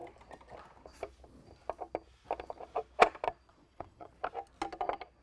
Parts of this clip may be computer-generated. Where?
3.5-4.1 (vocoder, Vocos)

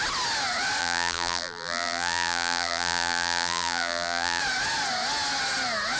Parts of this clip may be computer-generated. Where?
0.8-4.4 (vocoder, BigVGAN v2)

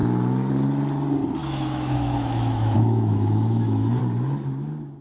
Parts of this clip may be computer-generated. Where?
1.4-4.0 (autoencoder, DAC-VAE)